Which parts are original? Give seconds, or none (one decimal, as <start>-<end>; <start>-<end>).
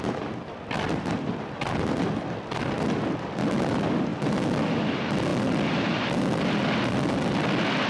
0.0-7.9